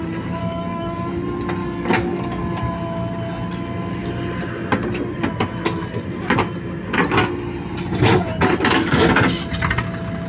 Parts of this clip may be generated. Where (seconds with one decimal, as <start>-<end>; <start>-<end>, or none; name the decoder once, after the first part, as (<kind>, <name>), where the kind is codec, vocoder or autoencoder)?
0.4-1.1 (codec, DAC); 1.6-2.4